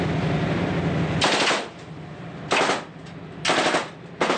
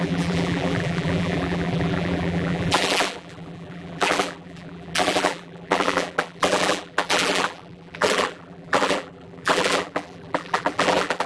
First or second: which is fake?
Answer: second